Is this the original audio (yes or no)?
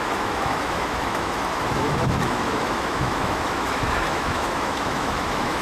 no